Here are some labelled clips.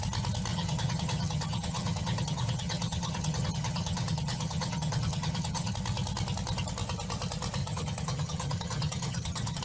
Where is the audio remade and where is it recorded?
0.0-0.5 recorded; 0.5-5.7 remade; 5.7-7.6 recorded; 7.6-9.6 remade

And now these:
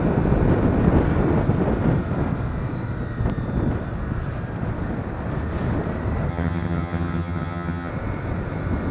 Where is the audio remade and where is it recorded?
0.0-6.3 recorded; 6.3-7.9 remade; 7.9-8.9 recorded